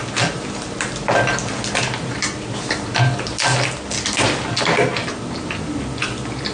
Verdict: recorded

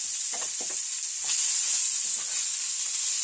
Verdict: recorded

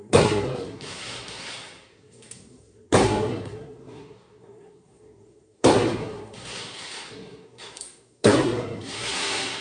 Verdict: remade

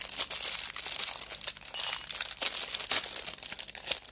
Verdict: recorded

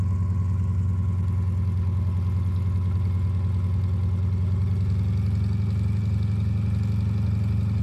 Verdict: recorded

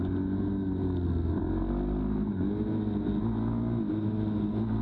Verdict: recorded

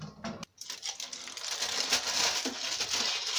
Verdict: recorded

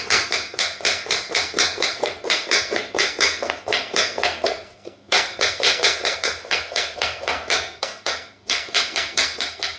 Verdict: remade